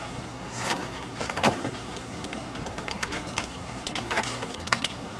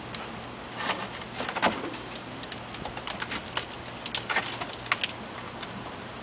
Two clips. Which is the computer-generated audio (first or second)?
first